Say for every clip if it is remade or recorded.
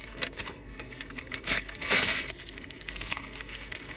remade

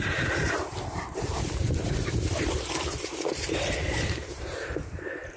remade